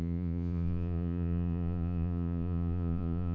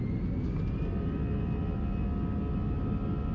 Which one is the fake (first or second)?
first